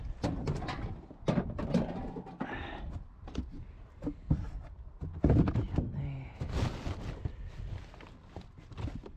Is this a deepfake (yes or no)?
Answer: no